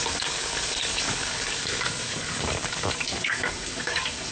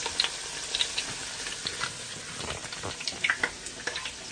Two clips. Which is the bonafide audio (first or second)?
second